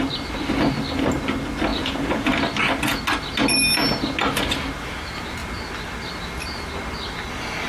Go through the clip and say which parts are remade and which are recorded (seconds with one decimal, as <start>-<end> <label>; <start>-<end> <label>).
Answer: 0.0-1.7 recorded; 1.7-2.3 remade; 2.3-7.7 recorded